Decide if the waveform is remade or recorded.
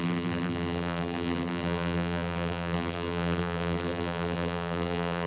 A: remade